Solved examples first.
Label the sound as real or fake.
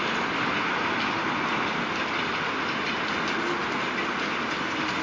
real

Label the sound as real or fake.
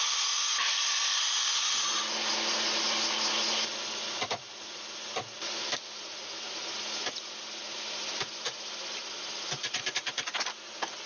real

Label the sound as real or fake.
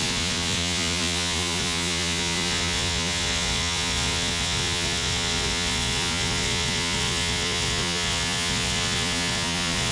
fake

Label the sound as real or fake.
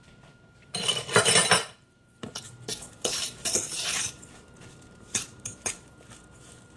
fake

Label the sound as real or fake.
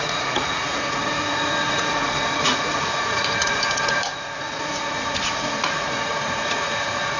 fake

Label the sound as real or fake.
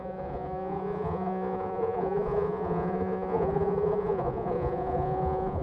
fake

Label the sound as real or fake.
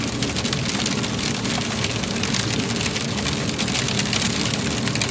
real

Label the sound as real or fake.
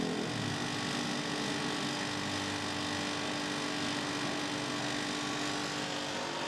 real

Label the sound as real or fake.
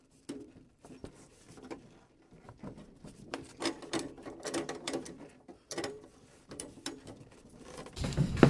fake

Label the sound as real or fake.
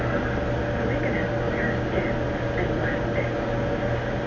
real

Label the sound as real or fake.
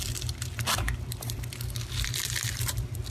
fake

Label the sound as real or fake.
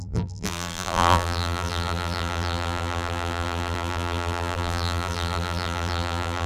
fake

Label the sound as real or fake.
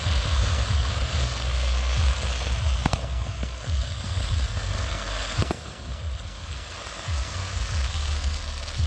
fake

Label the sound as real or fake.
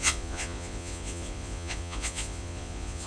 fake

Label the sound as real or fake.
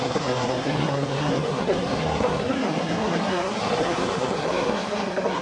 fake